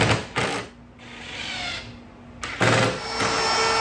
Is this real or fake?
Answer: real